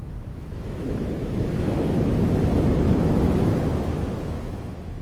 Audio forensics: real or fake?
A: fake